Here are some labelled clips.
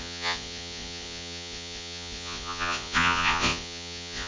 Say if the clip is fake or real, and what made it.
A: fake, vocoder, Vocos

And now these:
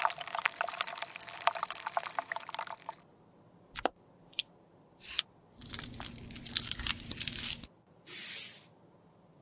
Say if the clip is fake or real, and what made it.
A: real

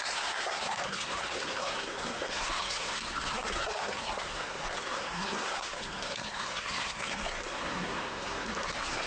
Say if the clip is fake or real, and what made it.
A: fake, codec, SNAC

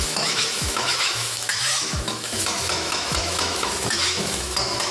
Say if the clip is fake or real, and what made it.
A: fake, autoencoder, DAC-VAE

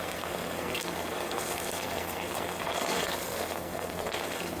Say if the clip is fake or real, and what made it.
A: fake, codec, SNAC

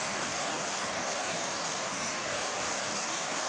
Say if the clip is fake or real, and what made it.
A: fake, codec, DAC